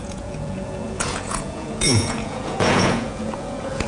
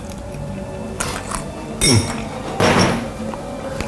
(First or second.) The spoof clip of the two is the first